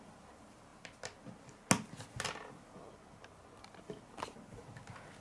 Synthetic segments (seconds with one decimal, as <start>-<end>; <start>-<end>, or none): none